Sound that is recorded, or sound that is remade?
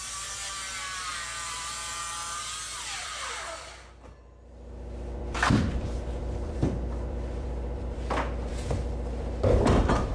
remade